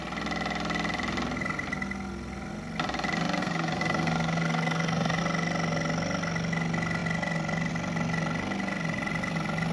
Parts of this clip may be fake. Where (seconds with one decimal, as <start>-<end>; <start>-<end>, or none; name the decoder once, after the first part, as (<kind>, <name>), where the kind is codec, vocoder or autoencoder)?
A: 3.4-5.2 (codec, SNAC)